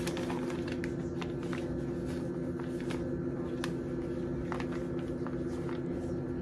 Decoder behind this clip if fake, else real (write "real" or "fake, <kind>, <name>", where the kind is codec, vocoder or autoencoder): real